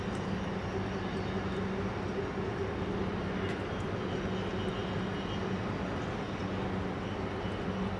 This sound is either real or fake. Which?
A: real